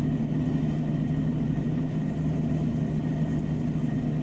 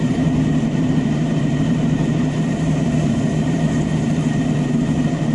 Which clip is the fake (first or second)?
second